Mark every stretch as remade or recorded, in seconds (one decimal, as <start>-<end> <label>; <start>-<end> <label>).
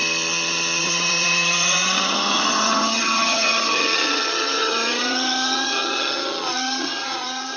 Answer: 0.0-0.8 recorded; 0.8-7.6 remade